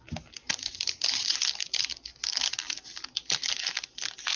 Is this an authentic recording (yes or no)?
yes